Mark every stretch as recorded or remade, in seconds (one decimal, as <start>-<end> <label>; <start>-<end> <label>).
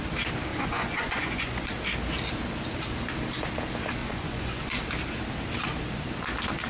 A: 0.0-0.5 recorded; 0.5-1.7 remade; 1.7-4.0 recorded; 4.0-4.8 remade; 4.8-6.7 recorded